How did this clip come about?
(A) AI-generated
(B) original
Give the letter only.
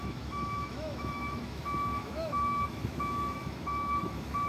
A